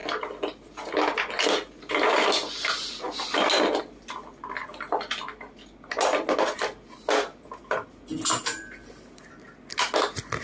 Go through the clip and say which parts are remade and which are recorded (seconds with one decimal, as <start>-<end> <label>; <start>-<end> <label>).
0.0-10.4 recorded